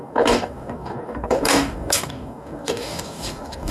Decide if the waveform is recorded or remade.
remade